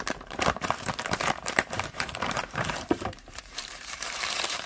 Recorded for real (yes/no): no